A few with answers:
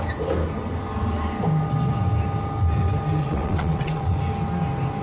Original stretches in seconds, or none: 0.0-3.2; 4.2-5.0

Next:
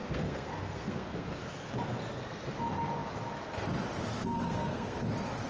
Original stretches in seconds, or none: 1.3-4.3; 5.0-5.5

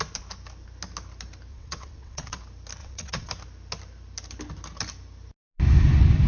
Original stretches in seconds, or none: 0.0-1.5; 2.4-2.8; 3.3-6.3